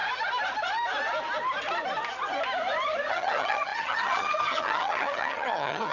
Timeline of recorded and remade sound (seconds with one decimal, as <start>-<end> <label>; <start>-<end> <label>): 0.0-3.1 recorded; 3.1-5.9 remade